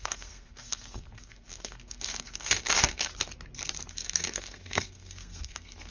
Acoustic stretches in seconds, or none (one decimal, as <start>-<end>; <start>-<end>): 3.1-3.9